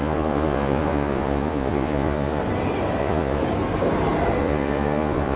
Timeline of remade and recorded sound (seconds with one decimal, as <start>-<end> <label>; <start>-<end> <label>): 0.0-2.4 remade; 2.4-3.0 recorded; 3.0-3.4 remade; 3.4-4.4 recorded; 4.4-5.4 remade